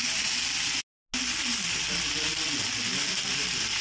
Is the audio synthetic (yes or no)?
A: no